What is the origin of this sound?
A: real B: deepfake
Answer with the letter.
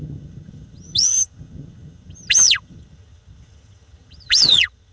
B